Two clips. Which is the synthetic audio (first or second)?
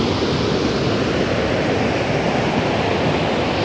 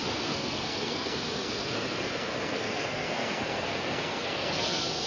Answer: second